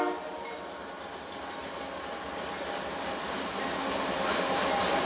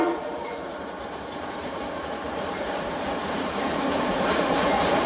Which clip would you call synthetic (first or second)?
second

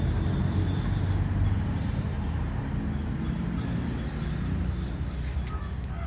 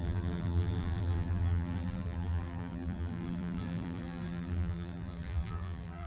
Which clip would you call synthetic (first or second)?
second